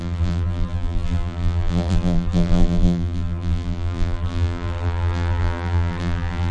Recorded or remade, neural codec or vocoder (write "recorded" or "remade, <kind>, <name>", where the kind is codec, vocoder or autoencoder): remade, vocoder, BigVGAN v2